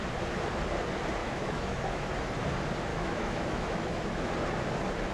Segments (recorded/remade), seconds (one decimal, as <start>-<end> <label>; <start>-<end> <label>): 0.0-1.2 recorded; 1.2-2.1 remade; 2.1-2.9 recorded; 2.9-4.3 remade; 4.3-5.1 recorded